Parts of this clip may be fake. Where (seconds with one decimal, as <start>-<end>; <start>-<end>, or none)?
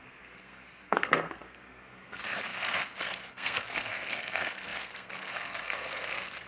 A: 0.0-6.5